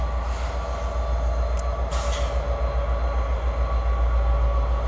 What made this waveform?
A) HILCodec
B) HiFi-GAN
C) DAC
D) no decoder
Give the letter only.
D